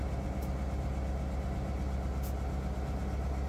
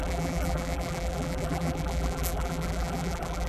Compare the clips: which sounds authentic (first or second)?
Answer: first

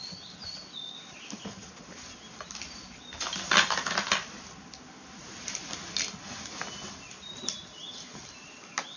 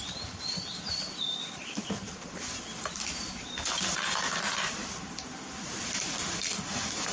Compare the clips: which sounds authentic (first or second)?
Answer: first